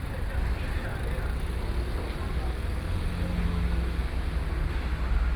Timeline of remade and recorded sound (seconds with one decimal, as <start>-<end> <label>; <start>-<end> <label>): 0.0-5.4 recorded